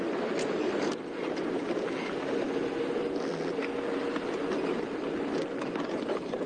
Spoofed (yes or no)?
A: no